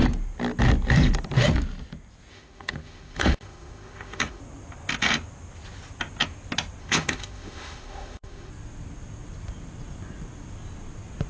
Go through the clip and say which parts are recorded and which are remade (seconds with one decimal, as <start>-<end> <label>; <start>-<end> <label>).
0.0-2.3 recorded; 2.3-4.4 remade; 4.4-6.8 recorded; 6.8-8.5 remade; 8.5-11.3 recorded

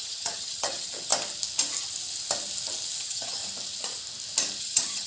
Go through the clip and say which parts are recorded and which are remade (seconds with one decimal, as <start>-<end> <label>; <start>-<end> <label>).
0.0-1.1 remade; 1.1-3.0 recorded; 3.0-3.4 remade; 3.4-4.6 recorded; 4.6-5.1 remade

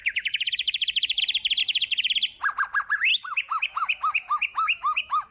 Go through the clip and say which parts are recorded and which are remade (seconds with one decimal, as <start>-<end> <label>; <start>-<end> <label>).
0.0-1.2 remade; 1.2-1.6 recorded; 1.6-2.1 remade; 2.1-3.1 recorded; 3.1-5.3 remade